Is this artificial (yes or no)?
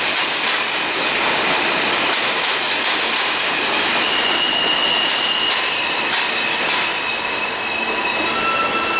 no